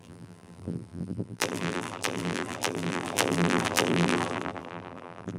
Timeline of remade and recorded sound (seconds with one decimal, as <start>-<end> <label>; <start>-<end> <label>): 0.0-5.4 remade

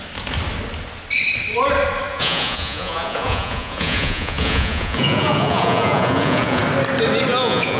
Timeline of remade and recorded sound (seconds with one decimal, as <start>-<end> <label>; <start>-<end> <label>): 0.0-2.1 recorded; 2.1-6.6 remade; 6.6-7.3 recorded; 7.3-7.8 remade

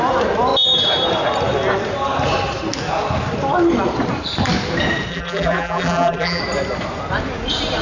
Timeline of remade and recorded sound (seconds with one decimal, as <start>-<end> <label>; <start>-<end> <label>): 0.0-5.1 recorded; 5.1-6.4 remade; 6.4-7.8 recorded

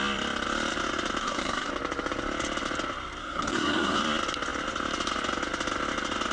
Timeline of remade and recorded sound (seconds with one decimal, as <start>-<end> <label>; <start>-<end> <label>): 0.0-1.2 recorded; 1.2-1.7 remade; 1.7-3.2 recorded; 3.2-4.0 remade; 4.0-6.3 recorded

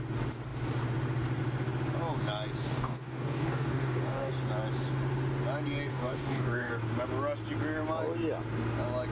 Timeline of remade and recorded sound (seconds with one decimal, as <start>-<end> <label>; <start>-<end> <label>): 0.0-2.6 recorded; 2.6-4.3 remade; 4.3-5.9 recorded; 5.9-6.7 remade; 6.7-9.1 recorded

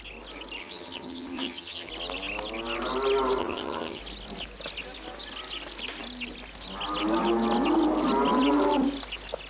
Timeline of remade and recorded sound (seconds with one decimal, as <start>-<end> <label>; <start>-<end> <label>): 0.0-0.6 recorded; 0.6-1.9 remade; 1.9-3.4 recorded; 3.4-4.0 remade; 4.0-9.5 recorded

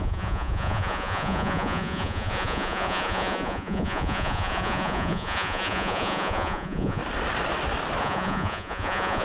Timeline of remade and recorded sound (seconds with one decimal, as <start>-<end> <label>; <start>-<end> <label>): 0.0-7.0 remade; 7.0-8.0 recorded; 8.0-9.2 remade